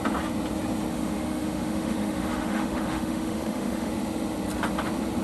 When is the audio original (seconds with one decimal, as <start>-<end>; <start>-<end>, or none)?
0.0-0.9; 3.9-5.2